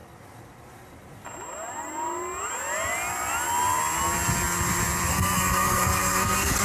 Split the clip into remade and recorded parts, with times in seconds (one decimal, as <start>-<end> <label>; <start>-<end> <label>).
0.0-5.1 recorded; 5.1-6.6 remade